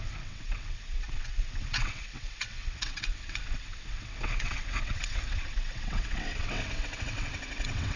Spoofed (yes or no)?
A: yes